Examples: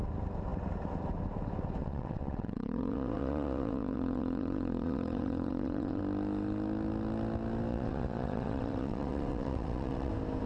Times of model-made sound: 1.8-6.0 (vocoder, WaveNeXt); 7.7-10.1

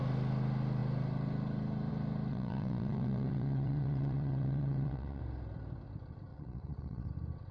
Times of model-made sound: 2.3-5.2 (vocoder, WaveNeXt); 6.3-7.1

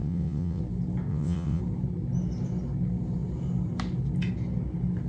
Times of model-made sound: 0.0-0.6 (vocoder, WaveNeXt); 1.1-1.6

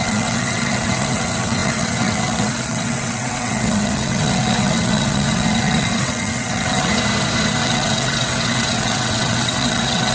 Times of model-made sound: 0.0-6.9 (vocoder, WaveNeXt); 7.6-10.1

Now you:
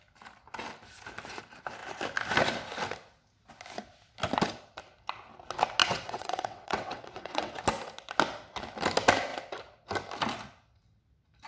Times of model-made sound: 5.8-7.6 (vocoder, WaveNeXt)

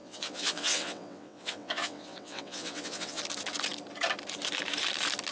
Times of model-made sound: 0.0-3.2 (vocoder, WaveNeXt)

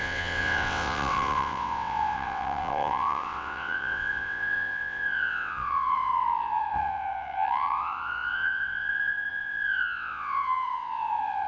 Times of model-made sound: 0.0-11.5 (vocoder, WaveNeXt)

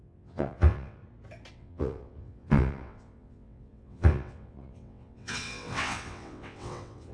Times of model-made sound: 0.0-1.0 (vocoder, WaveNeXt); 1.5-7.1